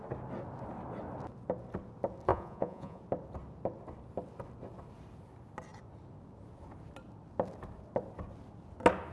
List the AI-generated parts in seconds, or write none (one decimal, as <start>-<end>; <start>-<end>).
2.3-3.0